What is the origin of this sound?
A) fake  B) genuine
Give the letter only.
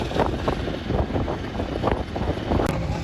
B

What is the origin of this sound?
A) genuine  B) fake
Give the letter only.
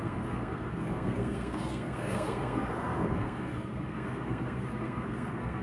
B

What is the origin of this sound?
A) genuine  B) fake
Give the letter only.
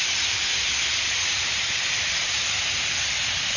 A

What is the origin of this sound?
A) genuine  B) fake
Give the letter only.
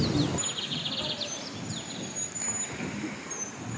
A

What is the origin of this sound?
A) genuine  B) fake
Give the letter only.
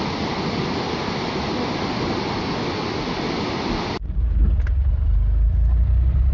A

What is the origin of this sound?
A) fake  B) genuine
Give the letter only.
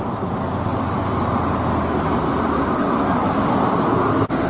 B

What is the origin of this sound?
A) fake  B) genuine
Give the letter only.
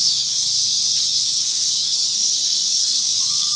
A